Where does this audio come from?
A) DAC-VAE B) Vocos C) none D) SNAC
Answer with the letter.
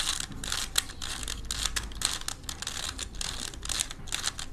C